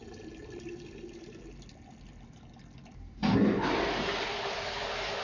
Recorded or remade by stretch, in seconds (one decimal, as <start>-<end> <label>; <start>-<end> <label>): 0.0-5.2 recorded